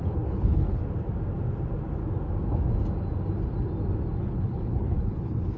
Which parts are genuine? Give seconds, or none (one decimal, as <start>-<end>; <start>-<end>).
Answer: 0.8-4.2